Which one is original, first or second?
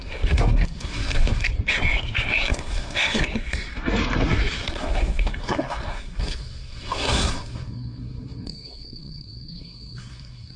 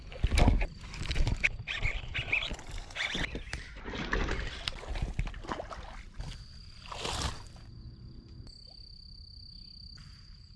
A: second